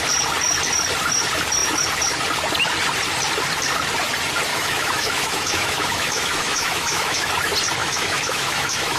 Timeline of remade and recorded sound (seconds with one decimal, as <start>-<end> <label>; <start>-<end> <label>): 0.0-4.5 recorded; 4.5-7.3 remade; 7.3-7.8 recorded; 7.8-9.0 remade